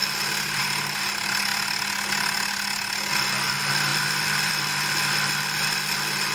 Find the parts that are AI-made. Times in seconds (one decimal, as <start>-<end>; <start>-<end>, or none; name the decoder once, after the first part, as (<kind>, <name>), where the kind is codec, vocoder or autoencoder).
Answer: 3.9-4.5 (vocoder, BigVGAN v2)